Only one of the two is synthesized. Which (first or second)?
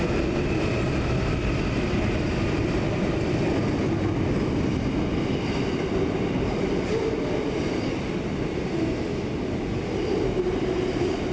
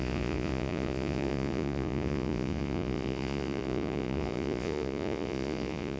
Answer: second